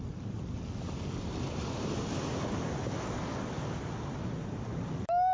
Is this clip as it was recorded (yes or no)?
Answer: yes